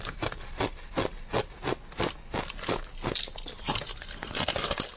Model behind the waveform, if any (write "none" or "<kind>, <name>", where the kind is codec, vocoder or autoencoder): none